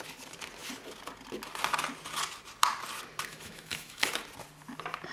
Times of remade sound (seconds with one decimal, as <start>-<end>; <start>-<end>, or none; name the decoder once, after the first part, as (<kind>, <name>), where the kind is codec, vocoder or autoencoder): 3.3-4.1 (autoencoder, DAC-VAE)